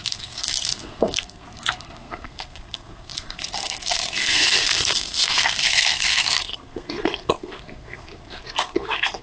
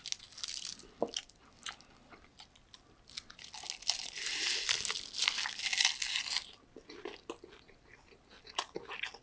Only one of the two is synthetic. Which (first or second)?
first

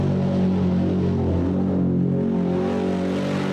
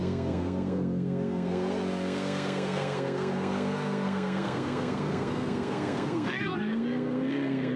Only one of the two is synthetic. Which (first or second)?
second